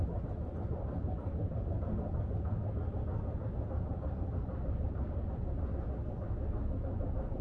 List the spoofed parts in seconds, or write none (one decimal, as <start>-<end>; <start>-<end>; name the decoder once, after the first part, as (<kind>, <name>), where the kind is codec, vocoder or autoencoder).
none

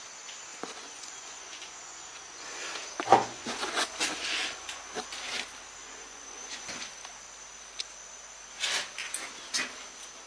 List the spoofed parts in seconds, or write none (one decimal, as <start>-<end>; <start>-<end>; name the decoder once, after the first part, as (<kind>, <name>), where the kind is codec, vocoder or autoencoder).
0.5-2.6 (vocoder, Vocos); 3.1-4.9; 5.8-6.9

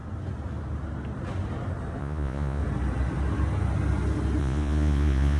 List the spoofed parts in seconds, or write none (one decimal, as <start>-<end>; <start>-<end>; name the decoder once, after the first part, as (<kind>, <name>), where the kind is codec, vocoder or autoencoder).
2.0-2.6 (vocoder, Vocos); 4.4-5.4